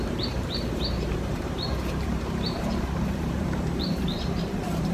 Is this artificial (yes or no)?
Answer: yes